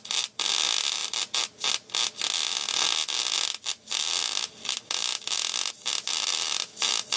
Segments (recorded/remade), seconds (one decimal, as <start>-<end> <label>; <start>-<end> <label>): 0.0-1.0 recorded; 1.0-1.7 remade; 1.7-6.3 recorded; 6.3-7.2 remade